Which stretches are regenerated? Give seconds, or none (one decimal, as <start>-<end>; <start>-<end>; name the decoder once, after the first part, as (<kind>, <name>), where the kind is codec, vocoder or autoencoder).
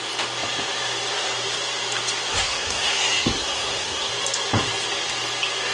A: 2.3-4.1 (codec, SNAC)